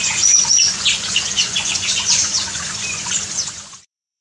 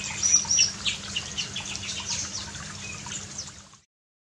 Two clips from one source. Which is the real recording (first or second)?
second